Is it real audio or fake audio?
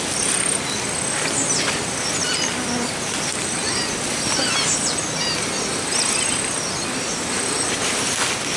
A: real